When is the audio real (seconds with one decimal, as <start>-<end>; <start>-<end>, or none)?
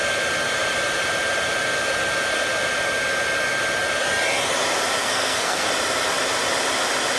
0.0-5.0; 5.7-7.2